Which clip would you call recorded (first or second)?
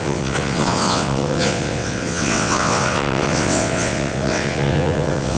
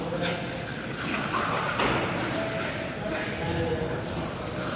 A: second